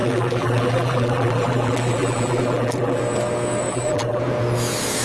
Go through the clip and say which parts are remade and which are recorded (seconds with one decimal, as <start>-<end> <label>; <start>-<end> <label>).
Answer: 0.0-3.0 remade; 3.0-3.7 recorded; 3.7-4.2 remade; 4.2-5.0 recorded